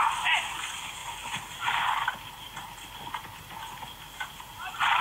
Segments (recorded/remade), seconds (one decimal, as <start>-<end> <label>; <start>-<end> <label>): 0.0-1.0 recorded; 1.0-3.4 remade; 3.4-5.0 recorded